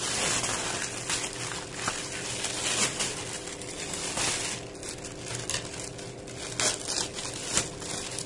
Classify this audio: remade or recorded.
recorded